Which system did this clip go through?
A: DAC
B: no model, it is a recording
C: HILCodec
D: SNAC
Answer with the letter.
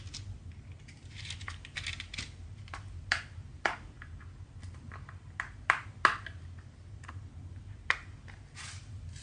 B